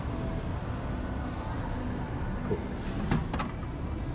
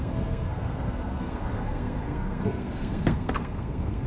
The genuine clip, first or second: first